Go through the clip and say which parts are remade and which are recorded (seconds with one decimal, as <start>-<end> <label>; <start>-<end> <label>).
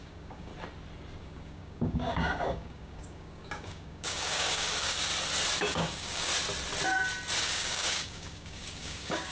0.0-0.5 remade; 0.5-1.2 recorded; 1.2-5.1 remade; 5.1-5.6 recorded; 5.6-6.3 remade; 6.3-7.4 recorded; 7.4-9.3 remade